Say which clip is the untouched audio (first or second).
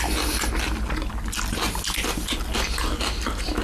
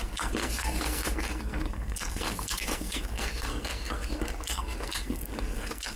first